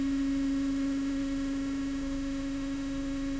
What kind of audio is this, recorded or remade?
remade